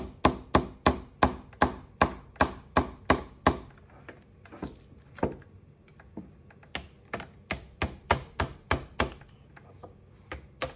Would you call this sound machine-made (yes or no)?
no